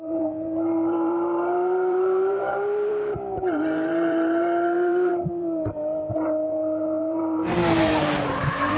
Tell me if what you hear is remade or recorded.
remade